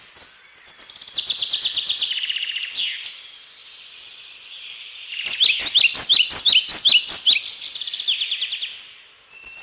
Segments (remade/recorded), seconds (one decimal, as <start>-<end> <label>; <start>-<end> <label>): 0.0-9.6 recorded